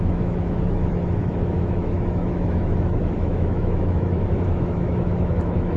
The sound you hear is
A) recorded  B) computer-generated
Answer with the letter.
B